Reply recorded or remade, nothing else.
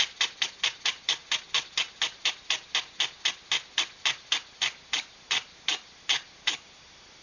recorded